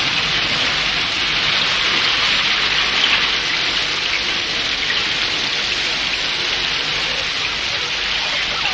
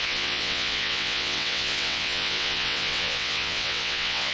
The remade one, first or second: second